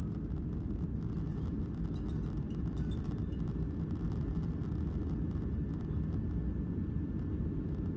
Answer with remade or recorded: recorded